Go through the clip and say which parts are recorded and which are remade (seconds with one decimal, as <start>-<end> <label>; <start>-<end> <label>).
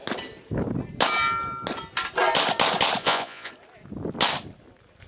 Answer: 0.0-3.0 recorded; 3.0-3.5 remade; 3.5-5.1 recorded